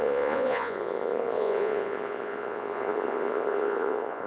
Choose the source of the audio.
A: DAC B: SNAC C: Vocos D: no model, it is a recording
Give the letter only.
C